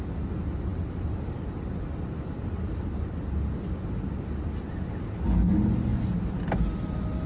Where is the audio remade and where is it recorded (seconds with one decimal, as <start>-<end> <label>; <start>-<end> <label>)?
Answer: 0.0-7.3 recorded

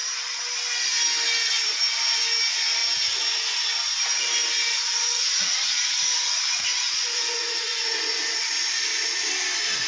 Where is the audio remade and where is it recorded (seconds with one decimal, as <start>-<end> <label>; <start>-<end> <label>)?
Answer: 0.0-4.7 recorded; 4.7-9.3 remade; 9.3-9.9 recorded